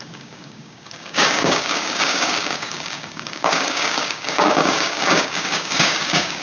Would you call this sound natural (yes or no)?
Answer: no